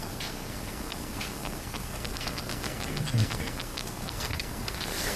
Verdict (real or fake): fake